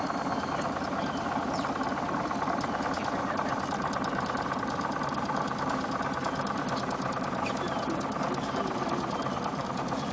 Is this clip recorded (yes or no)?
no